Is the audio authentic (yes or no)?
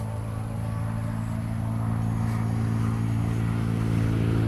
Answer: yes